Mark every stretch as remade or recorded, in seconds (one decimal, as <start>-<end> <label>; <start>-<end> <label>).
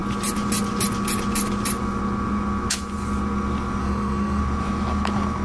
0.0-3.8 recorded; 3.8-4.4 remade; 4.4-5.4 recorded